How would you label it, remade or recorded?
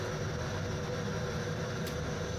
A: recorded